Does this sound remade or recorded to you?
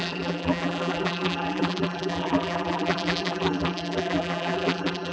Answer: remade